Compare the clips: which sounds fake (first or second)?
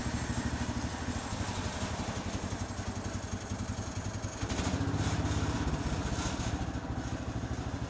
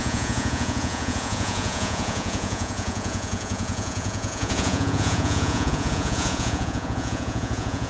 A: second